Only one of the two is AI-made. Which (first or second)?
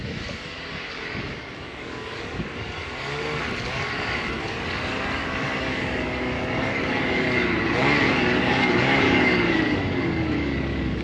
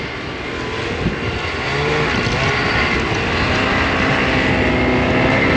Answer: first